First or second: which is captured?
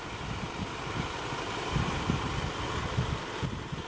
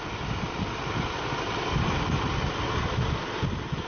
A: second